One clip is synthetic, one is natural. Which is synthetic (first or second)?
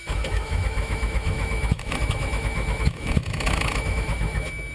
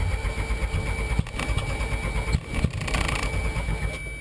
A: first